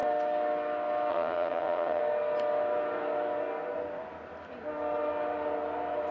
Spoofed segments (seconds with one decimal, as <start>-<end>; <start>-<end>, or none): 1.1-2.0